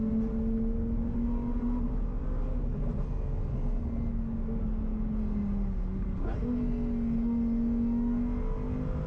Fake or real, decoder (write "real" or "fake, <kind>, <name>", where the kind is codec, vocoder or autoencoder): real